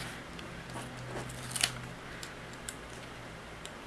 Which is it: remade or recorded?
recorded